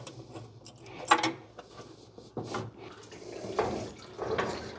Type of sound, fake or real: real